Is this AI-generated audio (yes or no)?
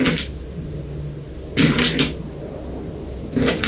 no